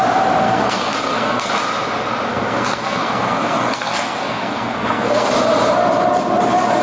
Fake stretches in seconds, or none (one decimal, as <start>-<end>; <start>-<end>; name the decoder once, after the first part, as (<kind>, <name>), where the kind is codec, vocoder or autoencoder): 0.4-1.5 (codec, SNAC); 2.3-5.3